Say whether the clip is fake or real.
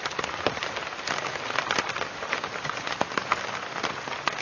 real